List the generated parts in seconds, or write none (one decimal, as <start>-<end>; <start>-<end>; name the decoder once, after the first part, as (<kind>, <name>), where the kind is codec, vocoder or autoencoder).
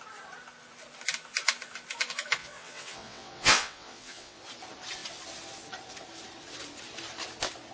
2.4-4.4 (vocoder, WaveNeXt)